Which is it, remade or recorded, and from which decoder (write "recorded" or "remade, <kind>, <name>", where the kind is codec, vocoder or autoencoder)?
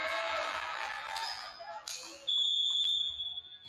remade, vocoder, BigVGAN v2